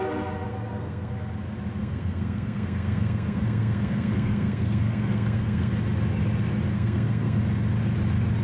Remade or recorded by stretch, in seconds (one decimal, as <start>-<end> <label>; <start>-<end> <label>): 0.0-0.5 recorded; 0.5-1.1 remade; 1.1-1.8 recorded; 1.8-5.7 remade; 5.7-6.7 recorded; 6.7-7.4 remade; 7.4-8.4 recorded